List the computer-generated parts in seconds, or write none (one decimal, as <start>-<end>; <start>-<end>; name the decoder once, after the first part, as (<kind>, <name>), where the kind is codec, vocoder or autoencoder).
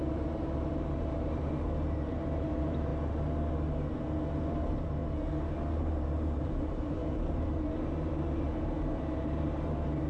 0.0-2.9 (vocoder, BigVGAN v2); 4.5-5.0; 5.9-10.1